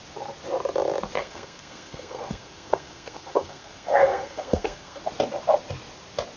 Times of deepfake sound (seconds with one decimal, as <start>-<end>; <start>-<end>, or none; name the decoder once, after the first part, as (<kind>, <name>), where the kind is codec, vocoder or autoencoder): 1.2-5.0 (codec, SNAC)